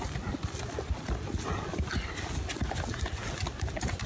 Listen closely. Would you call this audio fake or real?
real